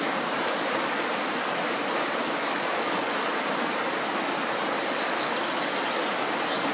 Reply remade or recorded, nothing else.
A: recorded